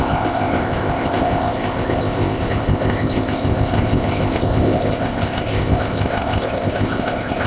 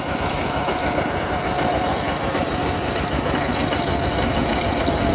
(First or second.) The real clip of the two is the second